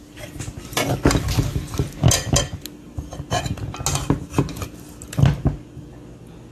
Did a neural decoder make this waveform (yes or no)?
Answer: no